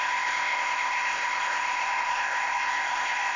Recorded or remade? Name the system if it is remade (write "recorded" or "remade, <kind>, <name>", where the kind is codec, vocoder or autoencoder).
remade, codec, ZipCodec